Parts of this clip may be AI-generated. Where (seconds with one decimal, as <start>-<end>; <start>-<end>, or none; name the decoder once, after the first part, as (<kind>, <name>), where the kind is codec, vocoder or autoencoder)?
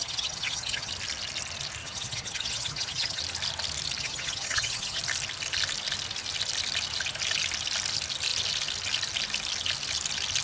0.0-0.9 (vocoder, HiFi-GAN); 1.8-3.2; 4.0-5.0